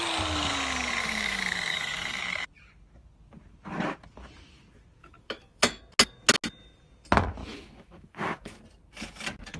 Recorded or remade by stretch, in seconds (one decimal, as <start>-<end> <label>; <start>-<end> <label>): 0.0-1.0 recorded; 1.0-2.2 remade; 2.2-5.0 recorded; 5.0-5.8 remade; 5.8-7.4 recorded; 7.4-8.6 remade; 8.6-9.6 recorded